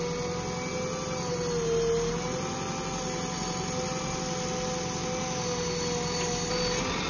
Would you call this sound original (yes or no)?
yes